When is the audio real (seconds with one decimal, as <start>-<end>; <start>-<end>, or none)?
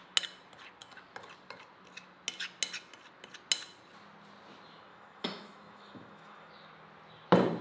0.0-4.9; 6.5-7.6